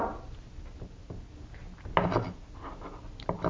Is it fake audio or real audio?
real